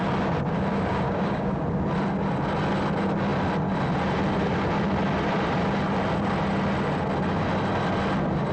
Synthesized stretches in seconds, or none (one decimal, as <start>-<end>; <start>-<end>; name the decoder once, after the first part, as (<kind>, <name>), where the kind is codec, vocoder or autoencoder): 0.7-1.6 (codec, DAC)